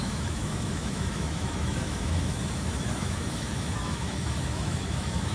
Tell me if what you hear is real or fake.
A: fake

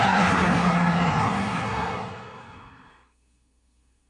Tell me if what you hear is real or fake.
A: fake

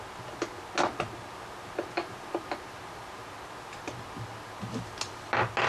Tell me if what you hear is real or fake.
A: real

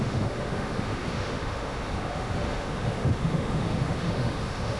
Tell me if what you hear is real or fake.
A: fake